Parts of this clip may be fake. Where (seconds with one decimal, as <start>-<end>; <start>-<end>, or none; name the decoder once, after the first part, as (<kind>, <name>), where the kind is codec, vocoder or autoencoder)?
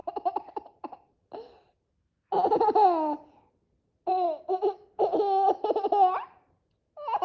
none